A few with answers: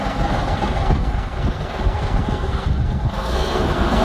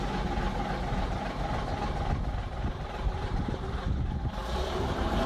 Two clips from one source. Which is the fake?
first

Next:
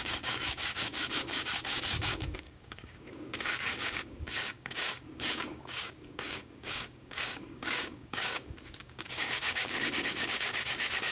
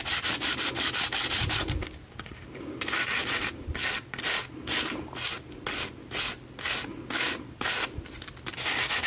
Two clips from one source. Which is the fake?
first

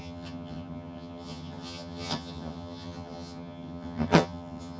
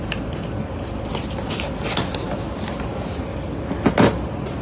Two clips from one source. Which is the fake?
first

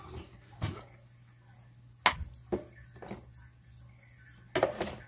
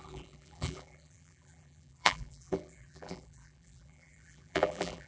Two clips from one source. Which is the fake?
second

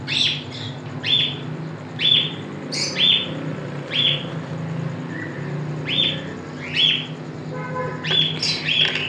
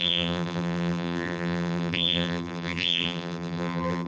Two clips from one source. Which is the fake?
second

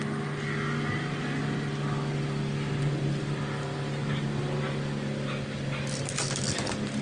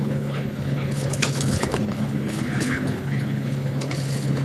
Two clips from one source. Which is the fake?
second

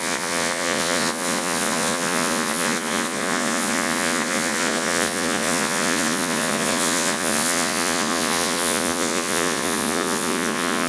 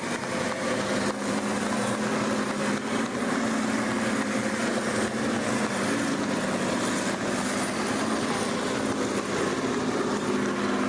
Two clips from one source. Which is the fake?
first